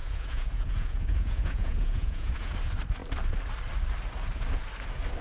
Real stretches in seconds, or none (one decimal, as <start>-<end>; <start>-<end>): 2.5-5.2